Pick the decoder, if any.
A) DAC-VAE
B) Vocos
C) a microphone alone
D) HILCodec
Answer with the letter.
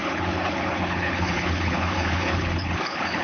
D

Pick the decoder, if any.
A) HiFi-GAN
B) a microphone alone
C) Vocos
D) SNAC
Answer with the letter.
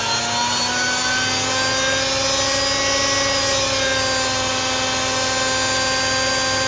B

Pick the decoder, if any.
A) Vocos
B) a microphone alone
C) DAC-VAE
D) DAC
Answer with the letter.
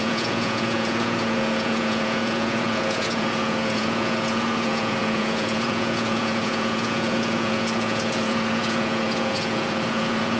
A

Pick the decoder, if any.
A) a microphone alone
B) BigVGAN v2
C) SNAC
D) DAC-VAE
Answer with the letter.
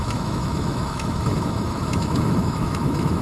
D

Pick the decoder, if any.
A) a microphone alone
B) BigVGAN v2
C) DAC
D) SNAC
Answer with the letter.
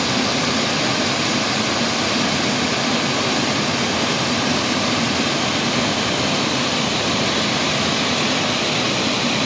A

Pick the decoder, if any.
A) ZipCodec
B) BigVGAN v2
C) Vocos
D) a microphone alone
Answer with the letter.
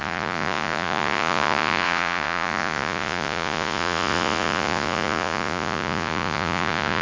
C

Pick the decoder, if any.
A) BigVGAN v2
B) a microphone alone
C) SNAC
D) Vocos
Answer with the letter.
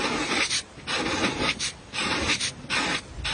B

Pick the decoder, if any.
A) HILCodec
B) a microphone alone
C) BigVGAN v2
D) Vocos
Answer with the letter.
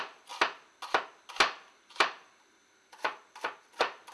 B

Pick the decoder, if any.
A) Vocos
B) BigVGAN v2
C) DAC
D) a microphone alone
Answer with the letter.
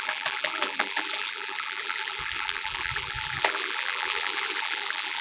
B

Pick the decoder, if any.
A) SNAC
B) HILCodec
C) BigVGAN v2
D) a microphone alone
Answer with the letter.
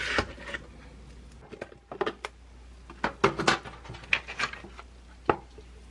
D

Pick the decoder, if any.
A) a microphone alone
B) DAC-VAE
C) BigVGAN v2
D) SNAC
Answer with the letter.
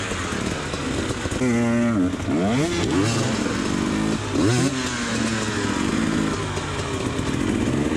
A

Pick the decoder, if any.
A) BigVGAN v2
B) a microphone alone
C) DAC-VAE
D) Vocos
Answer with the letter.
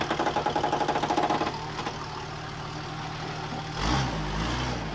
B